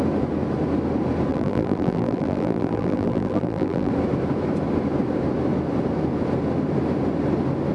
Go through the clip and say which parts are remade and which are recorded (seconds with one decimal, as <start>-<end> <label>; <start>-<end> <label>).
0.0-1.3 recorded; 1.3-3.9 remade; 3.9-7.7 recorded